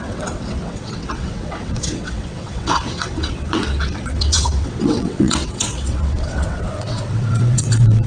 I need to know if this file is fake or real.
fake